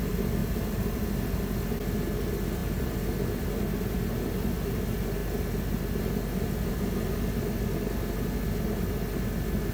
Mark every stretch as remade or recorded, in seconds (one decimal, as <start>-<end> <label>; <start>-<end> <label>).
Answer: 0.0-0.4 recorded; 0.4-1.0 remade; 1.0-9.7 recorded